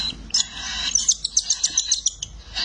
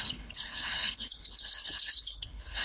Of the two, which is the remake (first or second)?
second